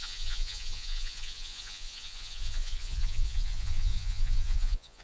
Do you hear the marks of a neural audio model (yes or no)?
yes